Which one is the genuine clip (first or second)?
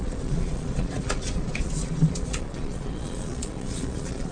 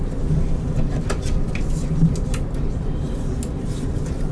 second